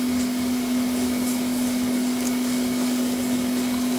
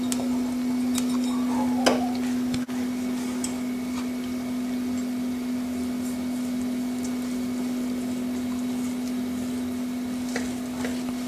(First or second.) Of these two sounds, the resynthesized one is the first